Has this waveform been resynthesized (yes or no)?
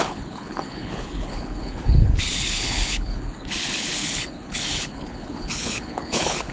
yes